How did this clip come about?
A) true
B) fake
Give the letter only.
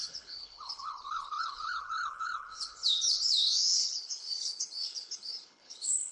B